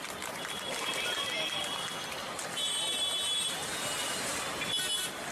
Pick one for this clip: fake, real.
real